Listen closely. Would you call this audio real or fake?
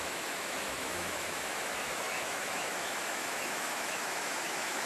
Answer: fake